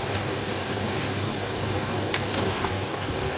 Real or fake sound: fake